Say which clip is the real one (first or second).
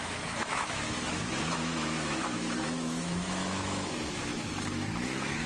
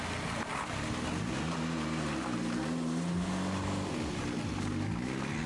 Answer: second